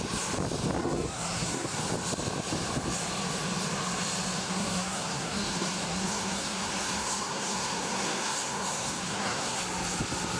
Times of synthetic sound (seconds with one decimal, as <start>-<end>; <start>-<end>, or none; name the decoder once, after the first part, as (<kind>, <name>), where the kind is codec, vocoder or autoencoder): 0.8-1.8 (codec, SNAC); 4.4-9.6